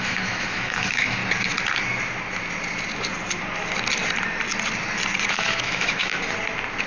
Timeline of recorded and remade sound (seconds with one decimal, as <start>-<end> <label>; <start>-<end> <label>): 0.0-1.2 remade; 1.2-5.3 recorded; 5.3-6.1 remade; 6.1-6.9 recorded